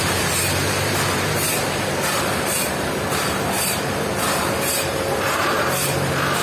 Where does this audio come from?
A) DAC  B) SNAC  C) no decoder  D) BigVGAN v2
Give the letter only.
D